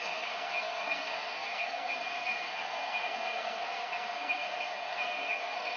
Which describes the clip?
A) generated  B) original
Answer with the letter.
A